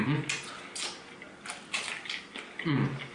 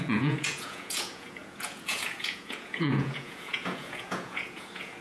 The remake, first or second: second